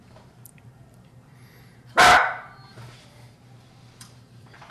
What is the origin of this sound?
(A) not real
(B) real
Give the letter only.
A